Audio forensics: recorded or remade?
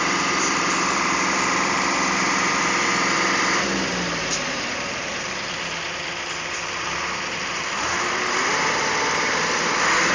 remade